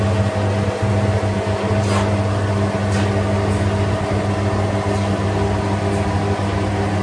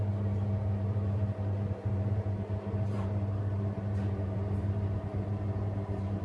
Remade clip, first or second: second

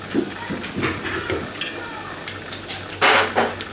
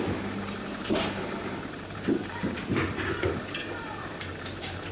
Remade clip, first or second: second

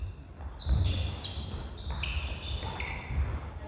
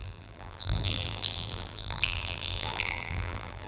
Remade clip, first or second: second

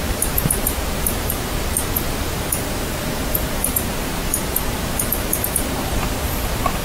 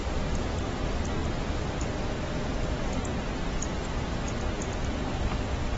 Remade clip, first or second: first